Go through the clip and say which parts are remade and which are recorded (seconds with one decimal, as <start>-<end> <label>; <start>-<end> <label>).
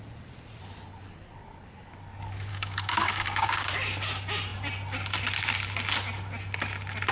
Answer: 0.0-2.5 recorded; 2.5-3.7 remade; 3.7-7.1 recorded